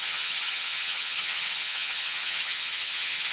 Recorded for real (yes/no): no